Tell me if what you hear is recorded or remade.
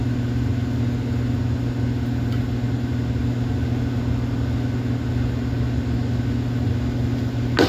recorded